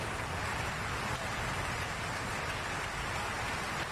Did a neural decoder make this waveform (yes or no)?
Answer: no